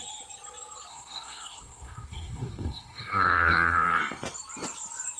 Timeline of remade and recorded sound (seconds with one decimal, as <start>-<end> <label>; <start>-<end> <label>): 0.0-0.9 recorded; 0.9-4.0 remade; 4.0-5.2 recorded